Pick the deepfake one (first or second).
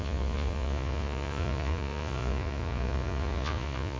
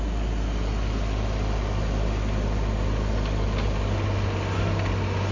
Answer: first